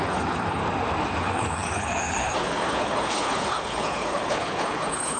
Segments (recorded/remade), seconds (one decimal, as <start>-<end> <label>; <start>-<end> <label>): 0.0-0.6 remade; 0.6-1.2 recorded; 1.2-5.2 remade